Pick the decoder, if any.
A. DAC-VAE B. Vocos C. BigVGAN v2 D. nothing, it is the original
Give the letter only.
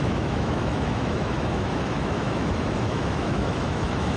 A